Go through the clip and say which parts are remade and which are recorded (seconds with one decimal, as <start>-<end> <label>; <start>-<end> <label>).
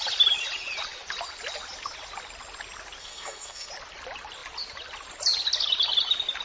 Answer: 0.0-3.0 recorded; 3.0-3.7 remade; 3.7-6.4 recorded